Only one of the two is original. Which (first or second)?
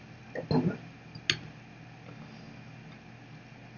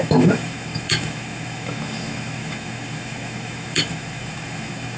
first